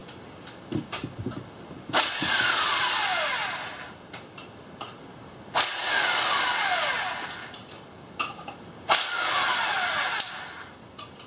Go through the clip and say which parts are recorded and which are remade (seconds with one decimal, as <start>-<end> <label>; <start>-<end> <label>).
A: 0.0-11.3 recorded